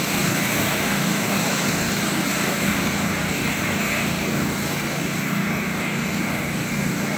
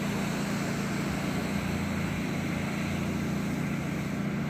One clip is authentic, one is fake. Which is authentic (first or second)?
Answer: second